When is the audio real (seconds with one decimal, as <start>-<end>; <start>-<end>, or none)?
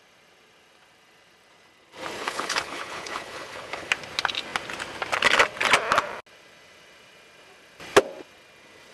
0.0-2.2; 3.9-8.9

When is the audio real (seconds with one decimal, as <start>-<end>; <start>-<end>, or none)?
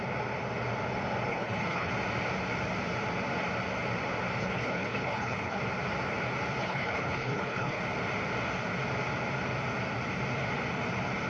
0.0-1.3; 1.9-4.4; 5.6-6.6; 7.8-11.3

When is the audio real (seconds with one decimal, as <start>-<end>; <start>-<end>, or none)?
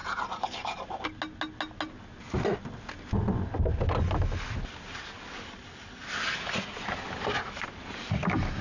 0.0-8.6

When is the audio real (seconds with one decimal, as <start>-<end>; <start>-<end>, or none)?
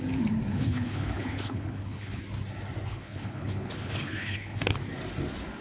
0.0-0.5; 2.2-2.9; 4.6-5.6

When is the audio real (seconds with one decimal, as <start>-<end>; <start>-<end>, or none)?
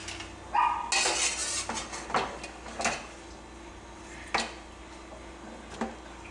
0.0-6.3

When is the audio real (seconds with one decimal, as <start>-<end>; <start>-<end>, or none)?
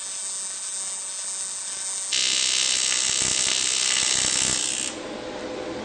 0.0-5.8